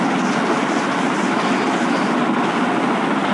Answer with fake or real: real